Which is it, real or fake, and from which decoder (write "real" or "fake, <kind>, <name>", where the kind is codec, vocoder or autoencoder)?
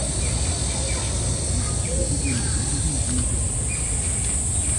real